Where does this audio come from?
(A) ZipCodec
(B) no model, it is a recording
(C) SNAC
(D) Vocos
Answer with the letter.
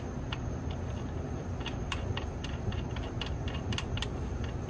B